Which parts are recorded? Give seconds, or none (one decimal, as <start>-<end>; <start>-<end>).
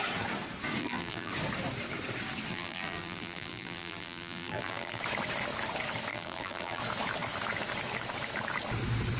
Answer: 0.0-0.8; 1.3-2.5; 5.0-6.1; 6.8-9.2